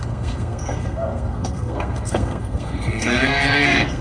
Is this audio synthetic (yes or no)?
yes